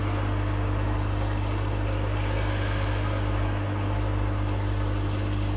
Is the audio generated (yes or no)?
no